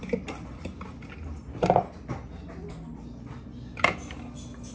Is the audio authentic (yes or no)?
yes